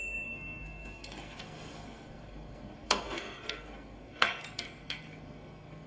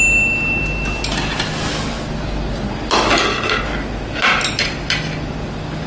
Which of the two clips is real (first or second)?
second